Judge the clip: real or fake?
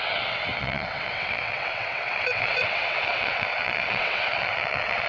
fake